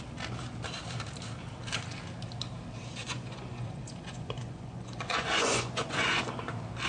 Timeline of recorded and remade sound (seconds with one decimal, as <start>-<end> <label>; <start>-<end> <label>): 0.0-3.0 recorded; 3.0-6.2 remade; 6.2-6.9 recorded